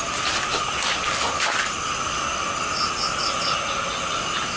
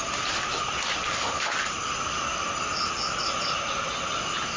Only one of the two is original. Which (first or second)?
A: first